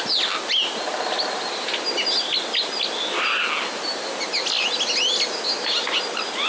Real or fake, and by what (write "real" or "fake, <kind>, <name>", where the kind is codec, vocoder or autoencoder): real